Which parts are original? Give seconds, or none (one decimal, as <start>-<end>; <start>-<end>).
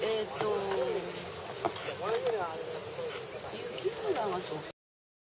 0.0-2.8; 3.4-5.2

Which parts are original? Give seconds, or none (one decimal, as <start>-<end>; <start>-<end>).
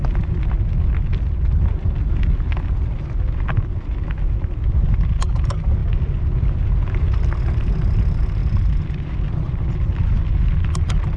0.0-11.2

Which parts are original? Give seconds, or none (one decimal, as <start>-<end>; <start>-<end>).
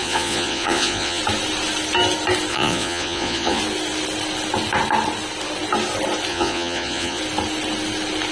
1.2-2.5; 3.6-6.3; 7.2-8.3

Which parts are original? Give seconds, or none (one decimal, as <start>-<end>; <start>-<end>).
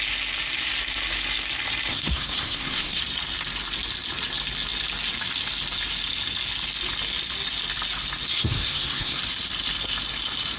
0.0-1.9; 3.0-8.3; 9.2-10.6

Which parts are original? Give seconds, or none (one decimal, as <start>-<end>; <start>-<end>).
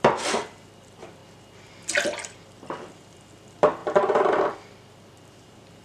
1.2-2.9